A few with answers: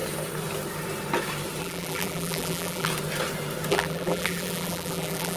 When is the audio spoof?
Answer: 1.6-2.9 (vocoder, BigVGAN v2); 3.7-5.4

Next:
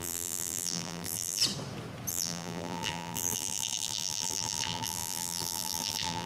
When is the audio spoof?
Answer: 0.0-1.4 (vocoder, BigVGAN v2); 2.1-6.3

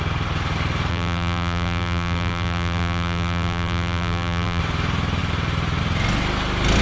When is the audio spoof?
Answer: 0.9-4.6 (vocoder, BigVGAN v2)

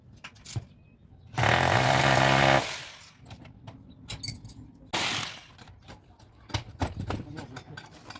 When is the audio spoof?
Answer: none

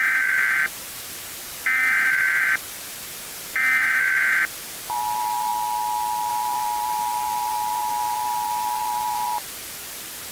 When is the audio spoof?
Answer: 0.0-5.5 (vocoder, BigVGAN v2); 6.3-10.3